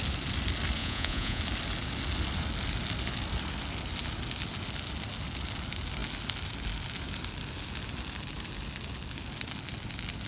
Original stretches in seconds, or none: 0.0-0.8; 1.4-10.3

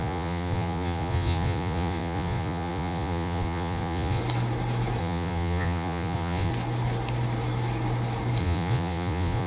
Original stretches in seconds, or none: 4.2-5.0; 6.5-8.4

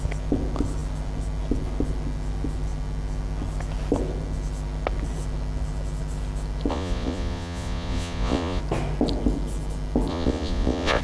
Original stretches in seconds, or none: 0.0-6.7; 8.6-10.1

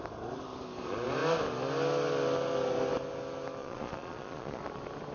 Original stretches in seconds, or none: 0.0-3.6; 4.6-5.1

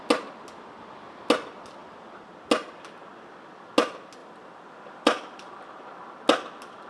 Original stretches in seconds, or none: 0.0-1.8; 2.3-4.2; 5.8-6.9